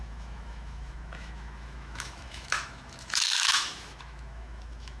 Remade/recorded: remade